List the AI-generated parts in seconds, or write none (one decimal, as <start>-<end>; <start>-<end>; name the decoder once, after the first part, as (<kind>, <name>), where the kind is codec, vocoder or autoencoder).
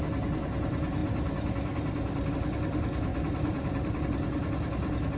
3.1-4.0 (vocoder, BigVGAN v2)